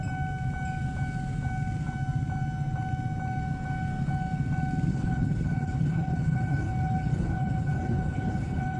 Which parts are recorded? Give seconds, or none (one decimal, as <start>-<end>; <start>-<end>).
0.0-4.9